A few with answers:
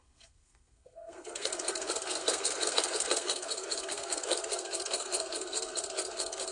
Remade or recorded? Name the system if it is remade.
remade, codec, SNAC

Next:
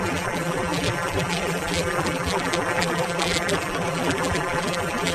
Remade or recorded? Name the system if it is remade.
remade, vocoder, BigVGAN v2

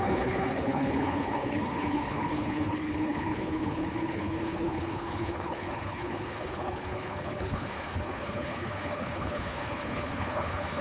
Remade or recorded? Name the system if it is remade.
remade, codec, HILCodec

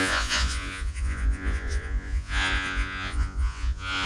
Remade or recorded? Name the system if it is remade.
remade, vocoder, Vocos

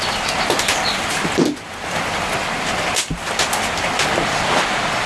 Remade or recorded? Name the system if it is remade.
remade, vocoder, BigVGAN v2